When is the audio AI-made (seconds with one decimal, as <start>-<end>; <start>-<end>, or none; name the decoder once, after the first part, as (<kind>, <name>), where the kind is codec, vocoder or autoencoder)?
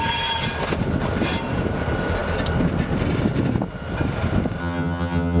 4.6-5.4 (vocoder, HiFi-GAN)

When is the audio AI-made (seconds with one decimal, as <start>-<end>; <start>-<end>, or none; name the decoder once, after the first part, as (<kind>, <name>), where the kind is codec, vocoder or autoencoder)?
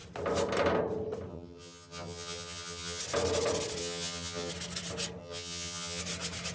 1.3-3.0 (vocoder, HiFi-GAN); 3.8-4.5; 5.2-6.0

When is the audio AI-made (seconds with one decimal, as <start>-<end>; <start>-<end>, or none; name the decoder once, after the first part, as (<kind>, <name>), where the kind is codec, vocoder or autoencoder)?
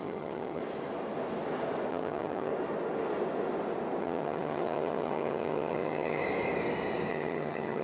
0.0-0.6 (vocoder, HiFi-GAN); 1.9-2.5; 4.0-6.2; 7.1-7.8